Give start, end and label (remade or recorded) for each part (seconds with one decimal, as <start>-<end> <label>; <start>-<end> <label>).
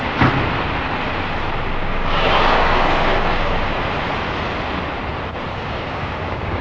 0.0-1.8 recorded; 1.8-3.5 remade; 3.5-5.5 recorded; 5.5-6.6 remade